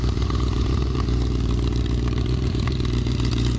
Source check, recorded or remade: remade